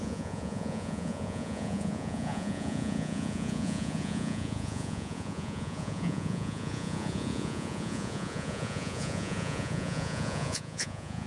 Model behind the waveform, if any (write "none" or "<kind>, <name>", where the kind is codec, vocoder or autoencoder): vocoder, Vocos